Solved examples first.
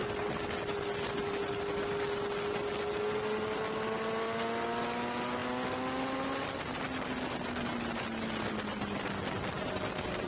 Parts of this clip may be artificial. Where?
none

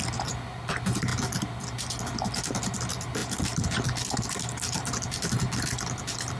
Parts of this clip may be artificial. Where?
none